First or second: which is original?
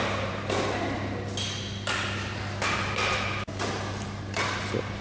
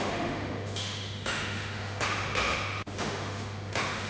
first